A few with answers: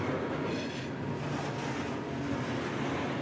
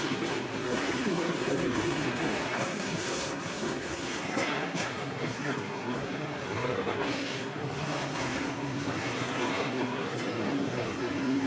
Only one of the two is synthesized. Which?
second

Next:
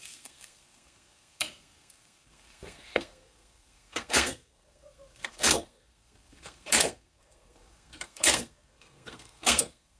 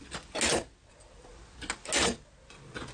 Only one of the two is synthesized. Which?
first